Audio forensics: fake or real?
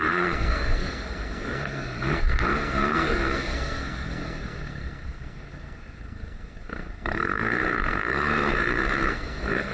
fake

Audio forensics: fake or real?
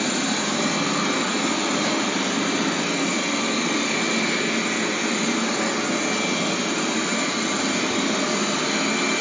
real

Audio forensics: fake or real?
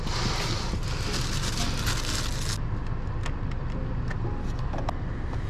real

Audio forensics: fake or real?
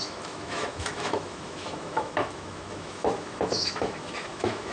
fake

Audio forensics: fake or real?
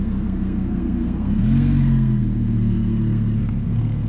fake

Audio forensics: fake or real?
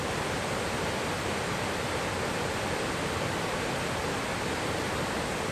real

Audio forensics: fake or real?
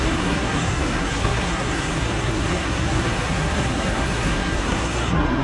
fake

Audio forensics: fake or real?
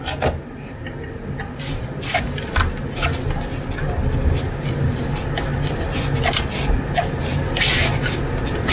real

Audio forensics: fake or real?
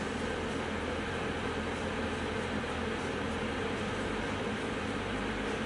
real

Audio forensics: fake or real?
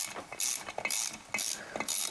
real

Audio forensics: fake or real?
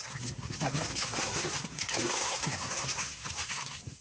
fake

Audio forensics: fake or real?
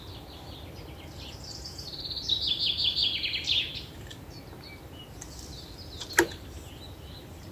real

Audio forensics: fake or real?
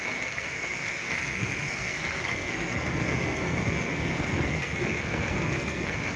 fake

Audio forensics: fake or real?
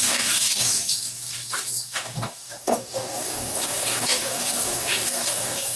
fake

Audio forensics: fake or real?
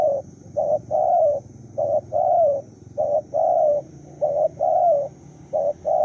fake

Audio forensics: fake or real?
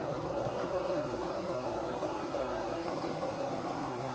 fake